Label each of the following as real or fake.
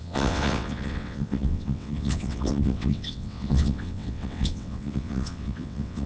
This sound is fake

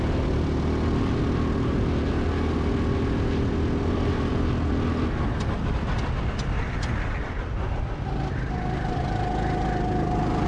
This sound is real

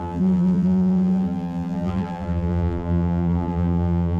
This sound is fake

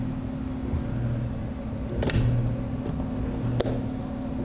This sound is real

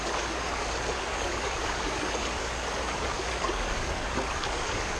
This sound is fake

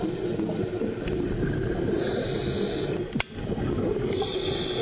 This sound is real